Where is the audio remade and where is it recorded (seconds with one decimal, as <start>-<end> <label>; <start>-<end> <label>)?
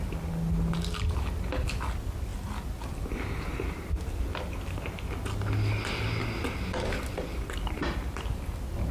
0.0-7.3 recorded; 7.3-7.8 remade; 7.8-8.9 recorded